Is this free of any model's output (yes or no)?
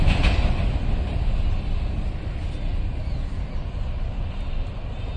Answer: yes